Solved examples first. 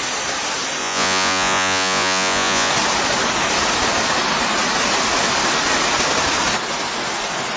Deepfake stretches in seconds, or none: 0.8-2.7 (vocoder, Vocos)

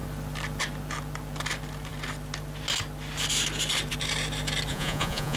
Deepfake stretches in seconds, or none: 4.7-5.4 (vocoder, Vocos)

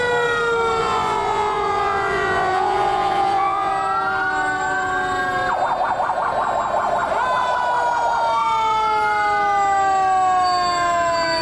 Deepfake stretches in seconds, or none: 0.8-3.7 (vocoder, Vocos)

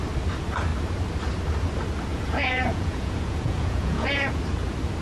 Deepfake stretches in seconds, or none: 2.1-4.4 (vocoder, Vocos)

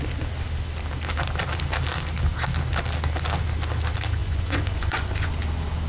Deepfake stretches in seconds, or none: 4.2-5.3 (vocoder, Vocos)

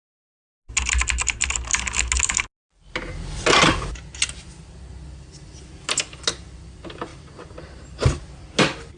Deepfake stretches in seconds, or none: none

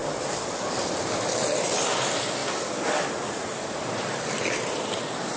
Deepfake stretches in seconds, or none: none

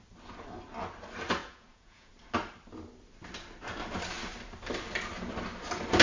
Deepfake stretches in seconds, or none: 1.4-2.1 (vocoder, Vocos)